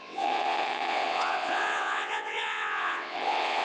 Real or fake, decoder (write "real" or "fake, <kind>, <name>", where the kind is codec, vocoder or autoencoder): fake, vocoder, WaveNeXt